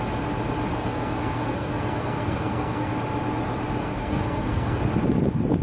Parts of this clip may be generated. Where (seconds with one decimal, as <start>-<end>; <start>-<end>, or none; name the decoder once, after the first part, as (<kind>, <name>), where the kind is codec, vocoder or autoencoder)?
0.7-2.9 (codec, SNAC); 3.8-4.8